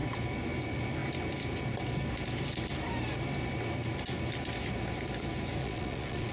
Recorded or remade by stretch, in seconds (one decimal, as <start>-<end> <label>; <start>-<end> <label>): 0.0-5.6 recorded; 5.6-6.3 remade